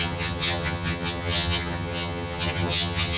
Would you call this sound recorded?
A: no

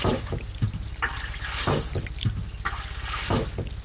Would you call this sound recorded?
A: yes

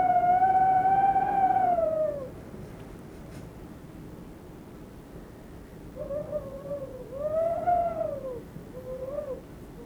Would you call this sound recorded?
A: yes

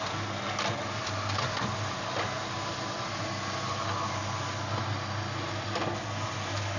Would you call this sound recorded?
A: yes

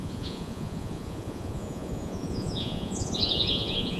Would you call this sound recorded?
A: no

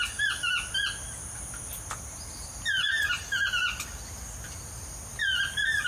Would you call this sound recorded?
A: yes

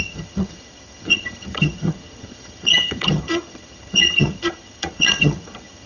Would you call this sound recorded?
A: no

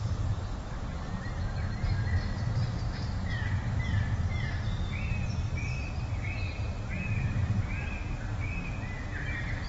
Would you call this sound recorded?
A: yes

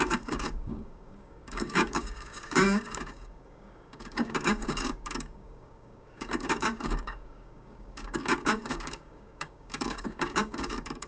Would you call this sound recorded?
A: no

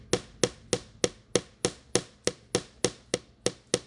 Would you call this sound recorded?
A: yes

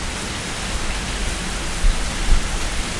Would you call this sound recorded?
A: yes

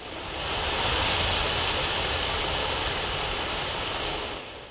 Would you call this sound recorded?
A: yes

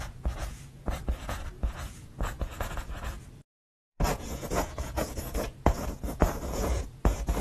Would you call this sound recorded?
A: no